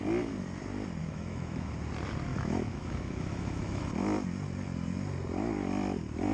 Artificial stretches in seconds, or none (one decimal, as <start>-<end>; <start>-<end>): 1.0-1.7; 2.3-3.8

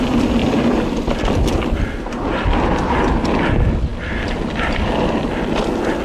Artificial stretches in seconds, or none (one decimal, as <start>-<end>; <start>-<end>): none

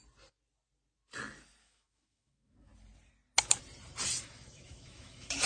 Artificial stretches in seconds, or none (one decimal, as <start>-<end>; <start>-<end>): 1.6-2.7; 4.2-5.5

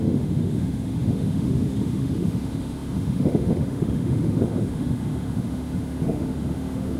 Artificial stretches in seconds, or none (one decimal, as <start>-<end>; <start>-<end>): 0.0-7.0

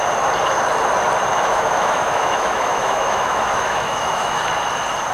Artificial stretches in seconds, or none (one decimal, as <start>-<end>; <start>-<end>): 1.3-4.4

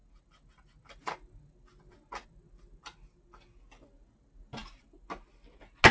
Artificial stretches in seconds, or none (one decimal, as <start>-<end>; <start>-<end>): none